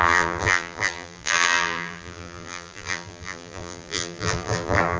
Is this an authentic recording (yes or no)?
no